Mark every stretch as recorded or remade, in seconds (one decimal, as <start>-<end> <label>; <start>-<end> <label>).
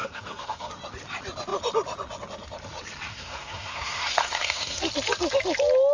0.0-0.7 remade; 0.7-3.1 recorded; 3.1-4.8 remade; 4.8-5.9 recorded